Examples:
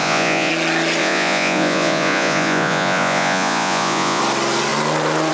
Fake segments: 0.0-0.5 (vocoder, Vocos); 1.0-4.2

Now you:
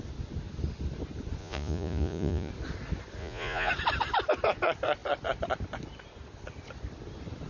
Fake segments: 1.4-2.5 (vocoder, Vocos); 3.2-3.7

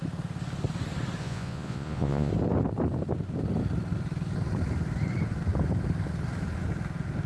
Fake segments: 1.2-2.3 (vocoder, Vocos)

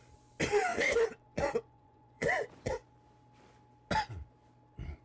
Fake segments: 0.7-2.9 (vocoder, Vocos)

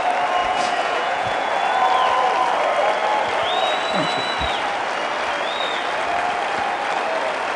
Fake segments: 0.4-1.5 (vocoder, Vocos)

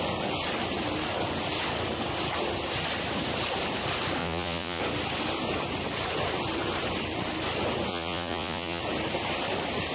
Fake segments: 4.2-4.8 (vocoder, Vocos); 7.9-8.8